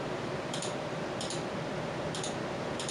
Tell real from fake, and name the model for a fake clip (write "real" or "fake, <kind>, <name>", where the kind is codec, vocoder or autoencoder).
fake, vocoder, BigVGAN v2